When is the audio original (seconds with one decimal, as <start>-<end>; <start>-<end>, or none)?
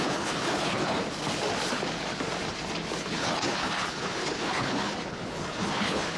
1.0-3.0